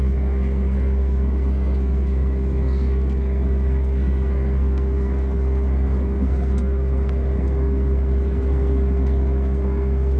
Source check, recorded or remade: remade